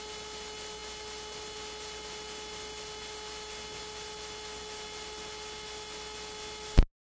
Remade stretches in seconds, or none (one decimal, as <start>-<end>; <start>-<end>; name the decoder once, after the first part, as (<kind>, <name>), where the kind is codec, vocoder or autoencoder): none

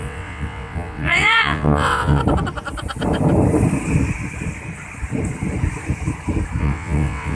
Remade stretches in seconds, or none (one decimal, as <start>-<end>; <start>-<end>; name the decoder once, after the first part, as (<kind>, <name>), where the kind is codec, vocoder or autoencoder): 0.0-2.2 (vocoder, WaveNeXt); 6.6-7.3